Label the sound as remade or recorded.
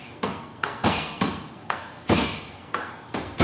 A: remade